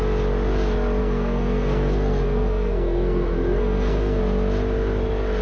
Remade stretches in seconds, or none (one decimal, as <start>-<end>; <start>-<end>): 1.0-4.2